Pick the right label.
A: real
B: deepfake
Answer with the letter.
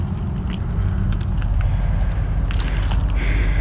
A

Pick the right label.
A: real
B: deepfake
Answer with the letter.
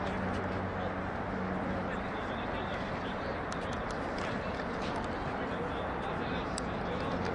A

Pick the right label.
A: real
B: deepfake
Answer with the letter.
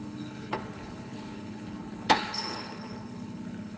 B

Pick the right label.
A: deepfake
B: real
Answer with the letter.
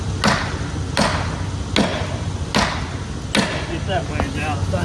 B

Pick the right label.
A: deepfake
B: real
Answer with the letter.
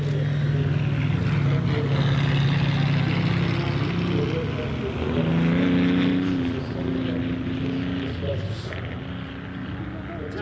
B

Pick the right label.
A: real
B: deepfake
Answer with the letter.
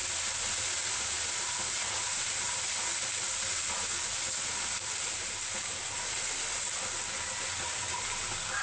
A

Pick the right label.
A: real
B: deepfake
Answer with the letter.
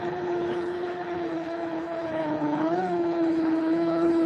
B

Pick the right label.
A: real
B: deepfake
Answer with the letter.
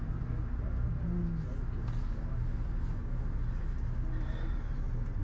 A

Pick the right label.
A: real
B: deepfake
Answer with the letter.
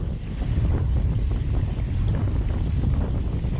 A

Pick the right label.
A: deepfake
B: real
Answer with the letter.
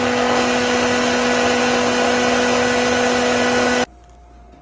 B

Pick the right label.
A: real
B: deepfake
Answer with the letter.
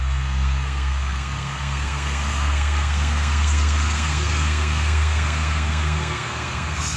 B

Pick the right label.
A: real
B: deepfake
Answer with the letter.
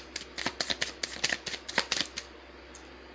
A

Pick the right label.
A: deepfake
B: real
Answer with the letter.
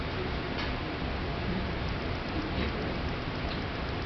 B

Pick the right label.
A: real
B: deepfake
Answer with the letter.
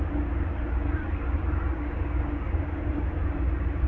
A